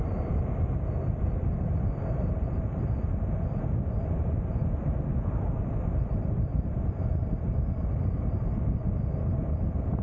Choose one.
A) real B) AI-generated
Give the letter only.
A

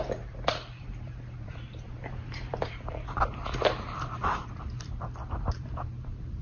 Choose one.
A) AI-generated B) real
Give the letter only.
A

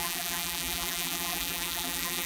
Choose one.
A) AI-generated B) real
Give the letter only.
A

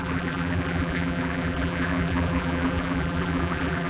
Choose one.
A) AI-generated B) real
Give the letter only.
A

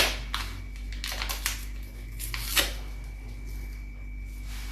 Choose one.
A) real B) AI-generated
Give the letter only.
A